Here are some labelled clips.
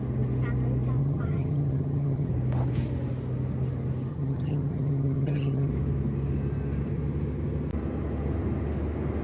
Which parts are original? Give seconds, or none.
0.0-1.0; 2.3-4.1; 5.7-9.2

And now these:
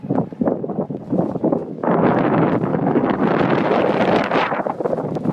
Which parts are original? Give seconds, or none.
0.0-1.6; 2.2-2.7; 3.2-5.3

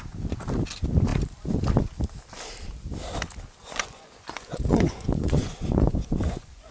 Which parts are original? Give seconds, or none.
0.0-3.6

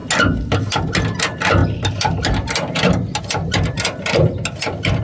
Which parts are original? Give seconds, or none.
0.0-5.0

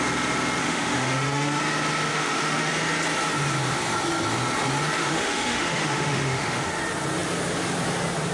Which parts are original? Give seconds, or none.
0.0-0.6; 1.6-2.1; 2.7-5.0; 6.8-8.3

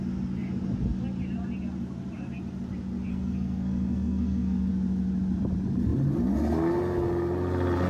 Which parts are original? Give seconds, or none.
0.0-3.1; 4.7-7.9

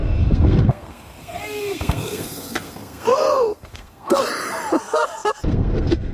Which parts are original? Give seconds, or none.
4.2-4.8

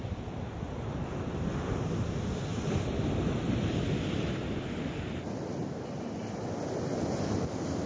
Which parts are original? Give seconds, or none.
0.0-7.9